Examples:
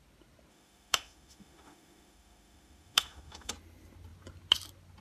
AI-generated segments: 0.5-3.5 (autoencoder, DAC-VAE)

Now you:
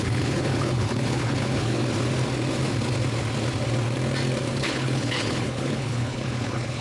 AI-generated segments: 0.0-1.8 (codec, HILCodec); 4.6-6.8

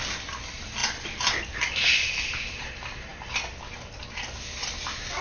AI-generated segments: none